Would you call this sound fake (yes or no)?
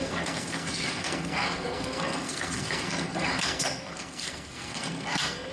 yes